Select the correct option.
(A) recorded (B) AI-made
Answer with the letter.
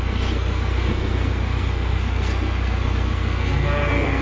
B